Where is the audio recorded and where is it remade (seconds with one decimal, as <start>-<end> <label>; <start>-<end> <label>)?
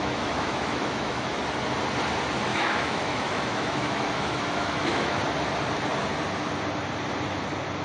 0.0-1.4 remade; 1.4-2.5 recorded; 2.5-5.2 remade; 5.2-7.8 recorded